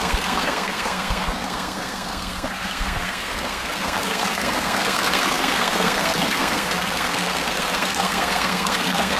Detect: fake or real fake